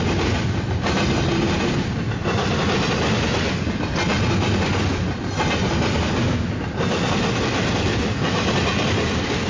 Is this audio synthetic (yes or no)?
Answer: no